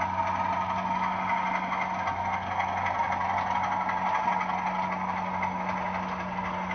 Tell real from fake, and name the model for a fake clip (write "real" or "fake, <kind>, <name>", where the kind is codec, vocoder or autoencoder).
real